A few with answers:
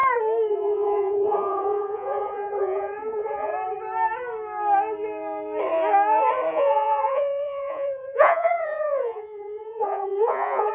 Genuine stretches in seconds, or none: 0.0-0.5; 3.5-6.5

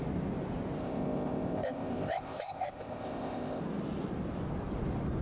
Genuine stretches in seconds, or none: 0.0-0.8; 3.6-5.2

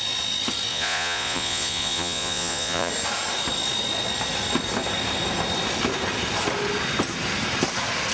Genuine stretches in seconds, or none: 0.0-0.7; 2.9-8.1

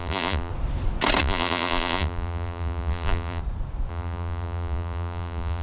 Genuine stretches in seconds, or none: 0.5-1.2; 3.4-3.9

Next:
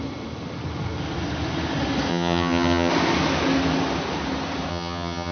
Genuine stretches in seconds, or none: 0.0-2.1; 2.9-4.7

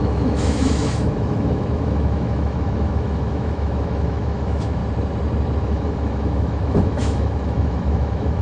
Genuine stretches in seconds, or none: 4.8-5.6

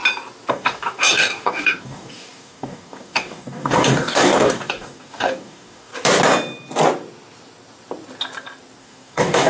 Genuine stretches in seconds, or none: 0.0-0.5; 5.9-8.8